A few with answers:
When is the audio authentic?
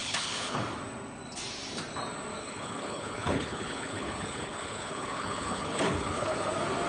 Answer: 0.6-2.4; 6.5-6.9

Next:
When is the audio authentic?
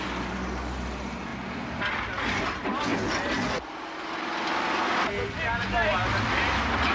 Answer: 0.0-6.9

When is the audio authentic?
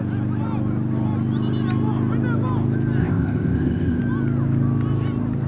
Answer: 0.0-3.0; 4.0-5.5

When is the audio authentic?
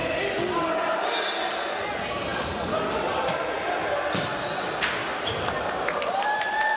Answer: 0.0-6.8